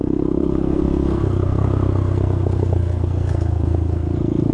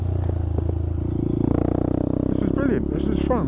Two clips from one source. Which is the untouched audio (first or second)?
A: second